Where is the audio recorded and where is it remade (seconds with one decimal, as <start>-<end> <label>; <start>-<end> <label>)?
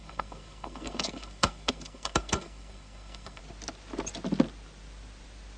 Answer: 0.0-3.4 remade; 3.4-5.6 recorded